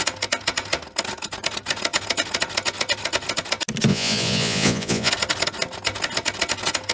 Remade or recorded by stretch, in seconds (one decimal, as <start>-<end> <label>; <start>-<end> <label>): 0.0-3.9 recorded; 3.9-5.1 remade; 5.1-6.9 recorded